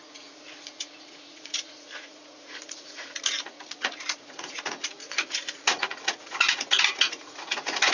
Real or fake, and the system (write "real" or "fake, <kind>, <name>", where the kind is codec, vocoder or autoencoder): fake, vocoder, Vocos